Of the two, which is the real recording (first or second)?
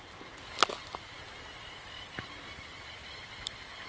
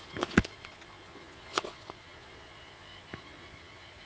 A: first